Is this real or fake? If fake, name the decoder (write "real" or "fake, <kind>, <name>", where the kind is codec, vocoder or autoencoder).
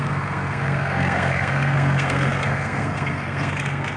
fake, codec, SNAC